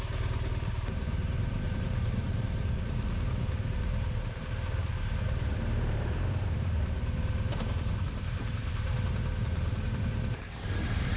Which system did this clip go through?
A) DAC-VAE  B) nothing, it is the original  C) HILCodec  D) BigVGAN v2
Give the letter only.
D